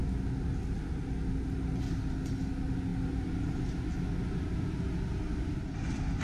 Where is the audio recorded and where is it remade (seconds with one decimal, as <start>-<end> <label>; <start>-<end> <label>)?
0.0-6.2 recorded